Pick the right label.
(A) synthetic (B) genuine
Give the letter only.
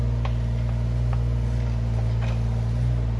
B